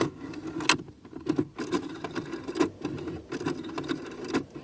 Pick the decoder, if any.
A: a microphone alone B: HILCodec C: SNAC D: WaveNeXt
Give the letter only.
A